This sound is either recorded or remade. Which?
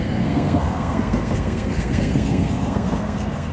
remade